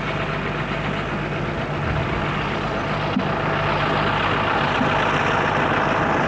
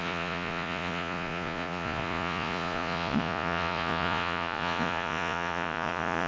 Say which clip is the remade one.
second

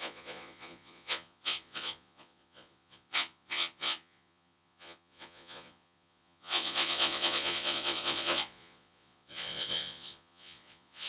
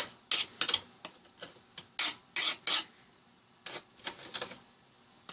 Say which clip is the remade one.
first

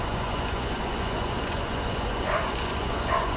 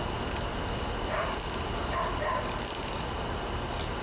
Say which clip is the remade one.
first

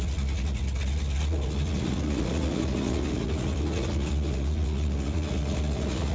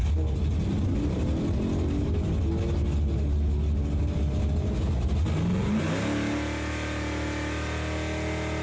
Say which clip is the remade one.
first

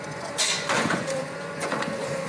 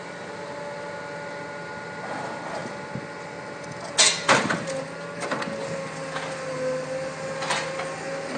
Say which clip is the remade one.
first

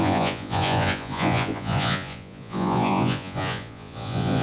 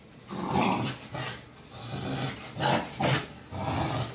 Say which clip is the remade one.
first